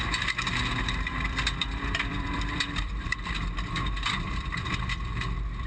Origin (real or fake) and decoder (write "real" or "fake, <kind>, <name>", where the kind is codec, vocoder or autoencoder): fake, vocoder, BigVGAN v2